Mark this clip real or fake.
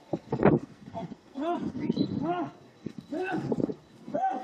fake